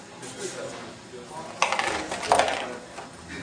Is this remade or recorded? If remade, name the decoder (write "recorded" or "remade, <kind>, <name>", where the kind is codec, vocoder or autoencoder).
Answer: recorded